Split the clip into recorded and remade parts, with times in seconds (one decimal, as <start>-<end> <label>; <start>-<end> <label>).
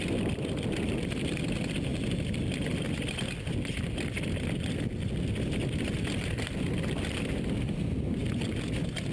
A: 0.0-9.1 recorded